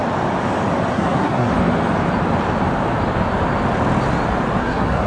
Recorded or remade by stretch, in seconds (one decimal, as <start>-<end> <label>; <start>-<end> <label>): 0.0-0.9 recorded; 0.9-1.5 remade; 1.5-4.6 recorded; 4.6-5.1 remade